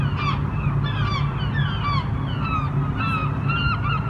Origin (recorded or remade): recorded